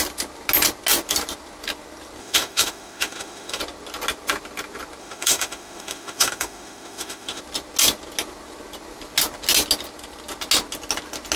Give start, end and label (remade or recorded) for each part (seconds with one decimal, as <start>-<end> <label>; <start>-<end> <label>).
0.0-2.2 recorded; 2.2-3.6 remade; 3.6-5.0 recorded; 5.0-7.4 remade; 7.4-11.4 recorded